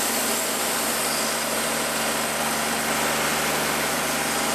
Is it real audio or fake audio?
real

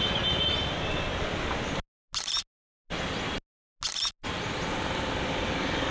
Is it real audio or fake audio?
real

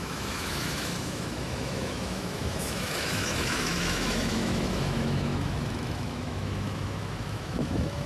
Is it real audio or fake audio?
fake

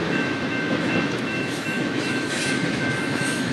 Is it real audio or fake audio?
fake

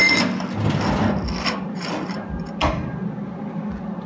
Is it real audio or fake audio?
real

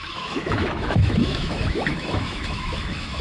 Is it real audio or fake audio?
fake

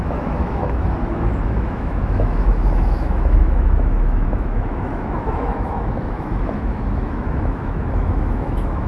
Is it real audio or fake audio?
fake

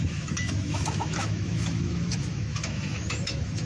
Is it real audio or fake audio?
fake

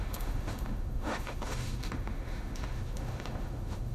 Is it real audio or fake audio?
fake